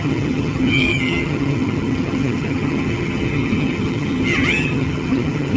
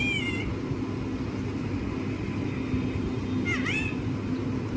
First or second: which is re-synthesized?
first